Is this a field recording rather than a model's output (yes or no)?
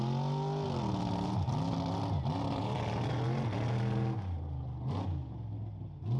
yes